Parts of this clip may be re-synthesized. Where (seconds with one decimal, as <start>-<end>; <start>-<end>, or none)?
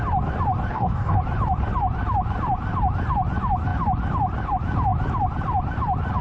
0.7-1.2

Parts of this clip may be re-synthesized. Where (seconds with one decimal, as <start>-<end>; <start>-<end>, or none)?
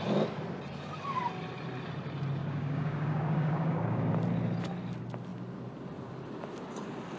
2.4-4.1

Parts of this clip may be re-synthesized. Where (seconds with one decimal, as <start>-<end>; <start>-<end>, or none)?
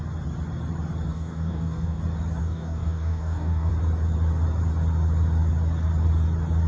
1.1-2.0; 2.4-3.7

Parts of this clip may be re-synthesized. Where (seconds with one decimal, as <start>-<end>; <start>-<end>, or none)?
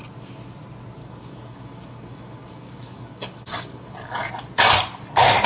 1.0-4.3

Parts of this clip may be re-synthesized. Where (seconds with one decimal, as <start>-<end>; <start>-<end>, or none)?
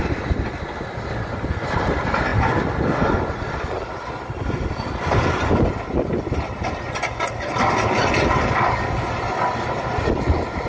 none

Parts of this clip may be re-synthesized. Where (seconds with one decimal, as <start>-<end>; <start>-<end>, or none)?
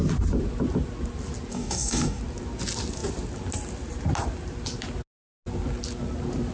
1.5-2.2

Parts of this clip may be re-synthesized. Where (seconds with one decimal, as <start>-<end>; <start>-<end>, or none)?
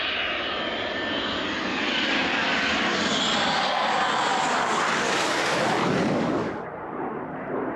1.7-3.2; 4.3-6.5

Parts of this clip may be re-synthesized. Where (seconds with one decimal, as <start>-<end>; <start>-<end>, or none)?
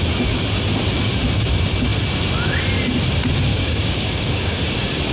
3.5-4.6